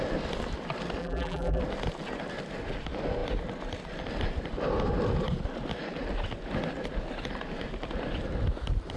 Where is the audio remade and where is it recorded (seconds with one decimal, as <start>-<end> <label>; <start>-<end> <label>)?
0.0-1.0 recorded; 1.0-1.6 remade; 1.6-9.0 recorded